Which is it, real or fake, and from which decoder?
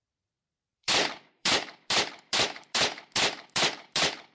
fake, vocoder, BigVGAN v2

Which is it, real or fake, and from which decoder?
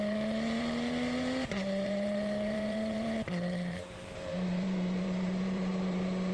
fake, vocoder, BigVGAN v2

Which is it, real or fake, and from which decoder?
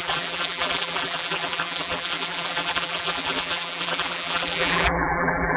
fake, vocoder, BigVGAN v2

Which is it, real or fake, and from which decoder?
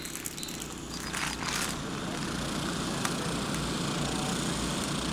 real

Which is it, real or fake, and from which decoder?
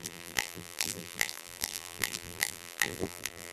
fake, vocoder, BigVGAN v2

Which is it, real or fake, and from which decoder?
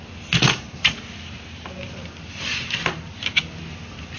real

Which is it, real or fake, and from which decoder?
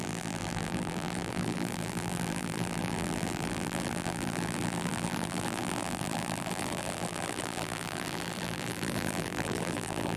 fake, vocoder, BigVGAN v2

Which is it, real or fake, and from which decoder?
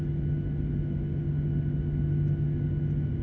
real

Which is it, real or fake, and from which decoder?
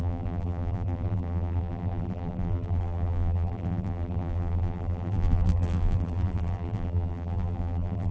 fake, vocoder, BigVGAN v2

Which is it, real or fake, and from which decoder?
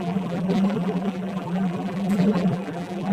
fake, vocoder, BigVGAN v2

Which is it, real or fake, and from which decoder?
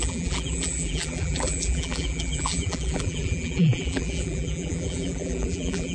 fake, vocoder, BigVGAN v2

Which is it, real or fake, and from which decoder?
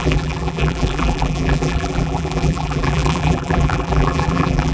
fake, vocoder, BigVGAN v2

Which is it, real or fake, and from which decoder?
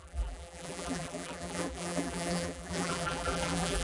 fake, vocoder, BigVGAN v2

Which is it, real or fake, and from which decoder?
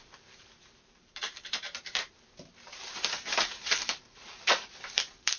fake, vocoder, BigVGAN v2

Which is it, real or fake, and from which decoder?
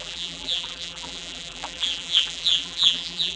fake, vocoder, BigVGAN v2